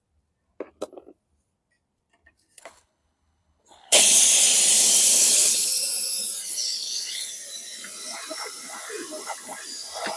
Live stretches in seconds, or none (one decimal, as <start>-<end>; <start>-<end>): 0.0-2.6; 4.2-5.1; 5.7-6.5; 7.3-10.2